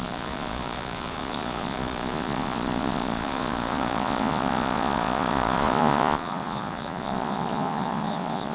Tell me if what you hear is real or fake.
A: fake